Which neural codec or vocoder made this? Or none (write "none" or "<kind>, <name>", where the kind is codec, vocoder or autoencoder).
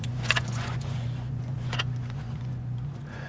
vocoder, Vocos